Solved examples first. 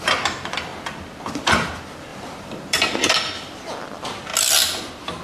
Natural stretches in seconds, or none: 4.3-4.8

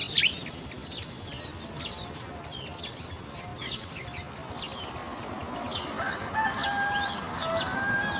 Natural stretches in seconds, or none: 0.0-8.2

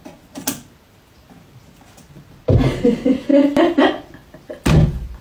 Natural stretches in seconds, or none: 0.0-5.2